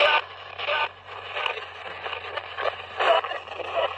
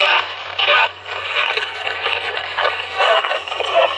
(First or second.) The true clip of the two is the first